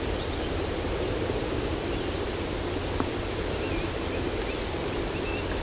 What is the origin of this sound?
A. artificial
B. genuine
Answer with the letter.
B